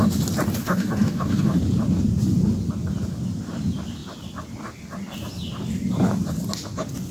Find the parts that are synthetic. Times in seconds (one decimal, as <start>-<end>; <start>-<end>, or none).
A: 0.6-1.6